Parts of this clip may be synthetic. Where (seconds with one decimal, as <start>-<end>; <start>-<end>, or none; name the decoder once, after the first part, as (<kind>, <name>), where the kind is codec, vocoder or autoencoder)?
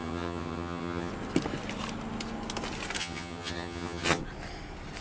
0.0-1.1 (vocoder, HiFi-GAN); 3.0-4.2